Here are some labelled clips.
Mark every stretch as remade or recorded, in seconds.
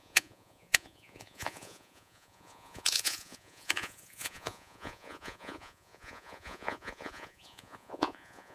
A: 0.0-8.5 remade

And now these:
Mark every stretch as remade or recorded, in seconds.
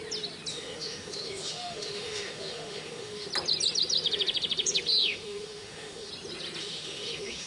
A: 0.0-0.5 recorded; 0.5-3.3 remade; 3.3-5.0 recorded; 5.0-6.1 remade; 6.1-6.6 recorded; 6.6-7.5 remade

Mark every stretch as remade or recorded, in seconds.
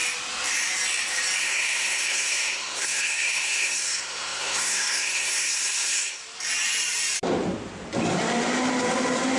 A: 0.0-1.4 recorded; 1.4-6.2 remade; 6.2-9.4 recorded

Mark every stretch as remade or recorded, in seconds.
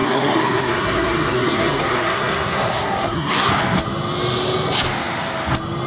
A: 0.0-3.5 remade; 3.5-5.9 recorded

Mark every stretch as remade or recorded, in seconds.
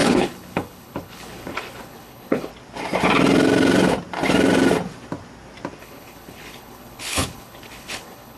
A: 0.0-2.5 remade; 2.5-5.8 recorded; 5.8-8.4 remade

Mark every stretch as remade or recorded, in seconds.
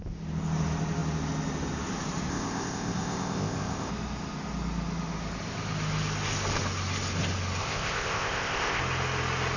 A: 0.0-2.3 recorded; 2.3-3.9 remade; 3.9-7.6 recorded; 7.6-8.8 remade; 8.8-9.6 recorded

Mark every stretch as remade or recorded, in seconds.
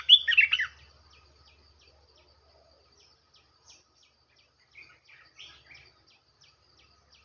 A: 0.0-7.2 recorded